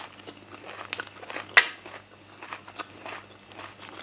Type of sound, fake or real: real